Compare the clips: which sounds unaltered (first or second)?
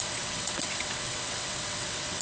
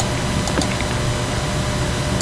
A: second